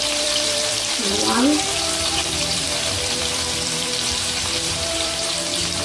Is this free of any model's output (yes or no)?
no